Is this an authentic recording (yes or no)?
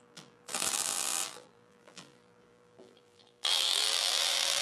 no